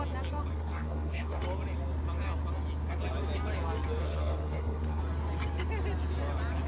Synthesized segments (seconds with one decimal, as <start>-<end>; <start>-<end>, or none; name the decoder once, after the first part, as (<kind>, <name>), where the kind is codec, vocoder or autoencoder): 0.5-1.4 (codec, SNAC); 4.0-5.0